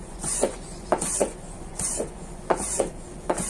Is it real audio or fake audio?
fake